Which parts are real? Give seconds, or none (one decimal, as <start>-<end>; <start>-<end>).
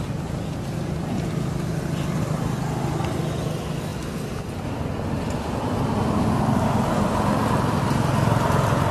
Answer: 0.0-8.9